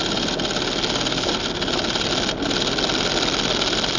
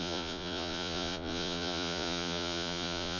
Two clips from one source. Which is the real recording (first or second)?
first